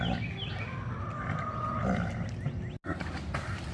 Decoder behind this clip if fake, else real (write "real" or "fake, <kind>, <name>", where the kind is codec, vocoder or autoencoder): real